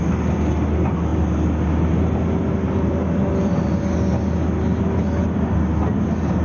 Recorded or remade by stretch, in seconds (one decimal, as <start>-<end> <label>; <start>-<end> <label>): 0.0-6.4 recorded